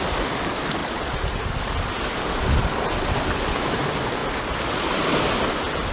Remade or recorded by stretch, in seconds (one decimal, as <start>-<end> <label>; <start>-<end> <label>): 0.0-5.9 recorded